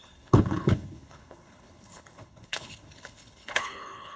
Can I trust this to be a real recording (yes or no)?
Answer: no